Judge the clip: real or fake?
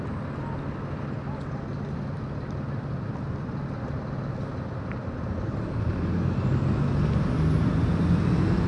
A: real